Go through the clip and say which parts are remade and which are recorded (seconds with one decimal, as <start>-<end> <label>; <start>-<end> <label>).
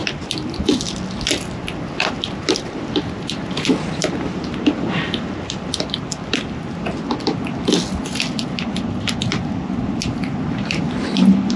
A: 0.0-11.6 recorded